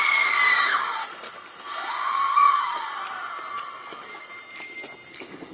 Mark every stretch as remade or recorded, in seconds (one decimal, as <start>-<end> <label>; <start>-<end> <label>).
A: 0.0-1.0 remade; 1.0-1.9 recorded; 1.9-2.9 remade; 2.9-3.5 recorded; 3.5-4.3 remade; 4.3-5.1 recorded; 5.1-5.5 remade